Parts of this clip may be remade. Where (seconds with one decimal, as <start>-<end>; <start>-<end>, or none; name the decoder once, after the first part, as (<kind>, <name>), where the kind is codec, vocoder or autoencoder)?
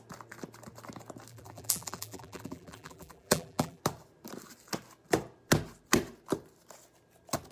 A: 1.3-3.8 (vocoder, BigVGAN v2)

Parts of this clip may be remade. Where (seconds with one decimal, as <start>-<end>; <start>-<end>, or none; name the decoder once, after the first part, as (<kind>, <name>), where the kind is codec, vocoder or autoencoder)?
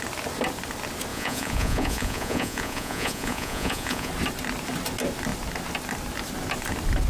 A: 1.1-4.1 (vocoder, Vocos)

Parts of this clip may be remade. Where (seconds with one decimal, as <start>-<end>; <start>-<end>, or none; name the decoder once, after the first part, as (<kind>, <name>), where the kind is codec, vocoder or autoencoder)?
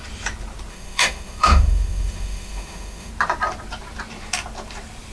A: 0.7-3.1 (autoencoder, DAC-VAE)